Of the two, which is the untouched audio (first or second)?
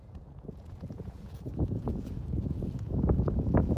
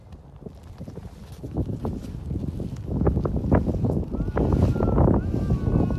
second